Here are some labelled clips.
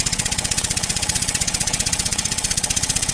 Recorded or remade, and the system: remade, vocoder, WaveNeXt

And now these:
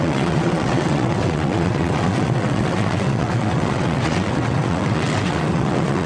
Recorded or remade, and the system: remade, vocoder, WaveNeXt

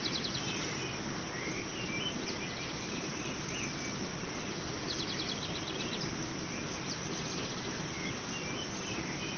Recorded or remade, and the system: recorded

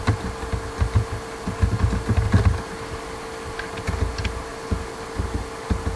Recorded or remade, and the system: recorded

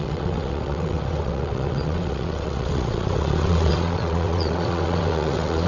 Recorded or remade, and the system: remade, vocoder, WaveNeXt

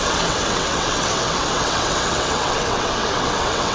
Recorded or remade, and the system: remade, vocoder, WaveNeXt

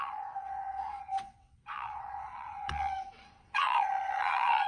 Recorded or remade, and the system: remade, vocoder, WaveNeXt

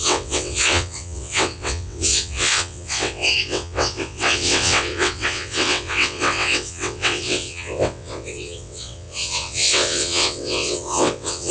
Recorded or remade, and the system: remade, vocoder, WaveNeXt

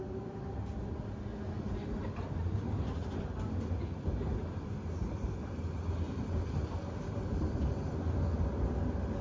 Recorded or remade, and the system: recorded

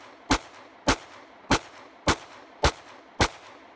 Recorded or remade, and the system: recorded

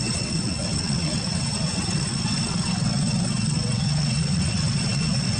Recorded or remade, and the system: remade, vocoder, WaveNeXt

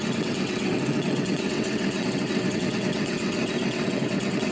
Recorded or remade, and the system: remade, vocoder, WaveNeXt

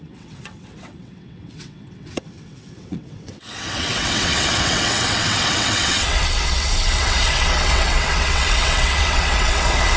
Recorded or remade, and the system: remade, vocoder, WaveNeXt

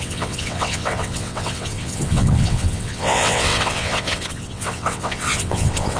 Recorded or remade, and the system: remade, vocoder, WaveNeXt